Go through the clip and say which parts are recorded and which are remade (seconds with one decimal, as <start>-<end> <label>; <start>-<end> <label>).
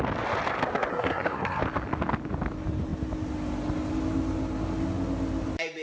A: 0.0-0.9 recorded; 0.9-1.6 remade; 1.6-5.8 recorded